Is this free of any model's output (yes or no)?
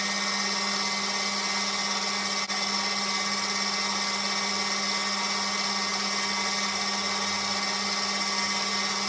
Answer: yes